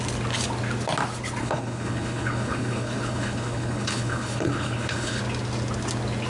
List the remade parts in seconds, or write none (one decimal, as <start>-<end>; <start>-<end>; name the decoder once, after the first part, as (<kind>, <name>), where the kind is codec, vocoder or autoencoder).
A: 1.4-5.2 (codec, HILCodec)